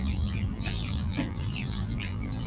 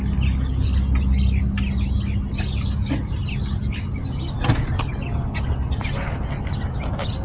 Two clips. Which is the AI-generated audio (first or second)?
first